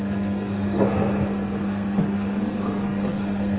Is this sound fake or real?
fake